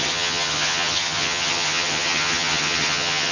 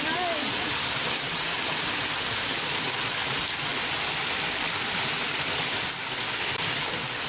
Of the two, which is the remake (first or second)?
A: first